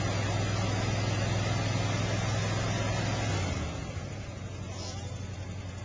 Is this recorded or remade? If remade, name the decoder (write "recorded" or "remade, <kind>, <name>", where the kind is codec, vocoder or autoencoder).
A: recorded